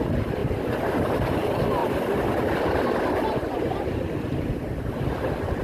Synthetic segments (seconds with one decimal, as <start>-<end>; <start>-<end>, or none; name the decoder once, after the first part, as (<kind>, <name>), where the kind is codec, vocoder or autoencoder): 0.0-0.4 (vocoder, BigVGAN v2); 1.2-5.6